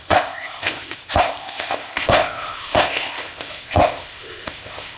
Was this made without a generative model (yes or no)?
no